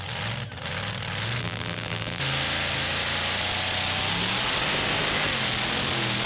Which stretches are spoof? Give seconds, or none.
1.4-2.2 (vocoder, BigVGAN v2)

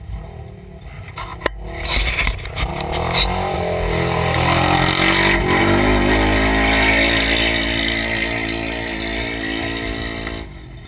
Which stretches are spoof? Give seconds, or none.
none

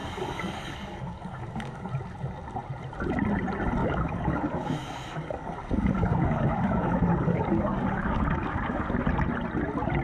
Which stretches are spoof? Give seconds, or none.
0.0-1.9 (codec, DAC); 3.8-8.9